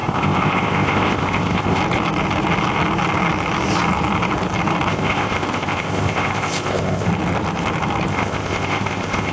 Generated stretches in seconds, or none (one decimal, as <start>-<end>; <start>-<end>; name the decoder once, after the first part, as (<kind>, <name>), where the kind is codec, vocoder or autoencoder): 0.0-1.8 (codec, ZipCodec); 4.9-7.1; 8.1-9.3